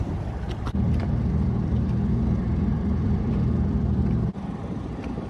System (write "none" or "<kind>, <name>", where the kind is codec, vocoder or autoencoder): vocoder, BigVGAN v2